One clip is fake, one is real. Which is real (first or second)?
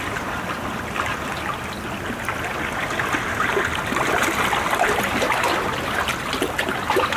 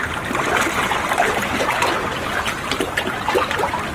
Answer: first